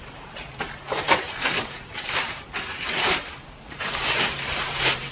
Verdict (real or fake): fake